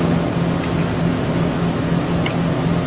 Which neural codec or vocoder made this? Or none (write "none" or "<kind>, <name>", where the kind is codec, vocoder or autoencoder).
none